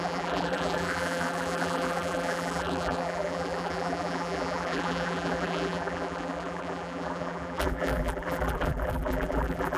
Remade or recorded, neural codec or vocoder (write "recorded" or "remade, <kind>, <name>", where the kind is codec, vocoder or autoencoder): remade, vocoder, BigVGAN v2